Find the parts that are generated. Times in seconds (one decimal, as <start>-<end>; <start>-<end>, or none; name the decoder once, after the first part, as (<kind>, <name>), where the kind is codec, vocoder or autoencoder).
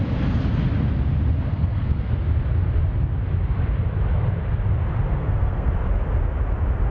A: 1.5-2.1 (codec, SNAC); 5.2-5.7